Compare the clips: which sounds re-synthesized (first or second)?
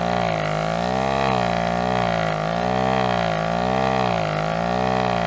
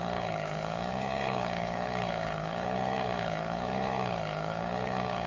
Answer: second